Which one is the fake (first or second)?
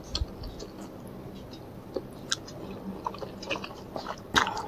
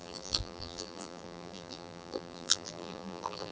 second